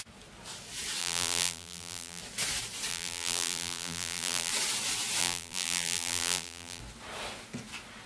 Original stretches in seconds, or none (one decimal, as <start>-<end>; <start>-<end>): 0.0-1.0; 2.2-2.9; 4.5-5.2; 6.8-8.1